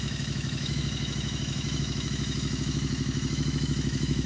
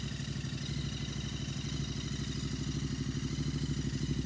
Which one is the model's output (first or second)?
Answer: first